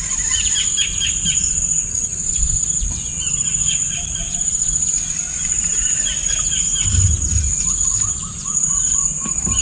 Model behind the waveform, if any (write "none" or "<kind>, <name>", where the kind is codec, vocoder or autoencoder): none